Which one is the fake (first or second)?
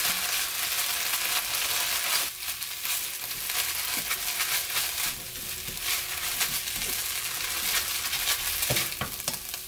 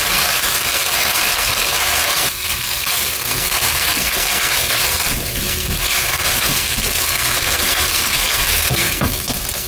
second